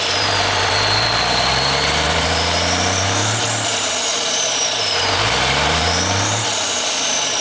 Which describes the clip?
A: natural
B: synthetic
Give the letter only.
B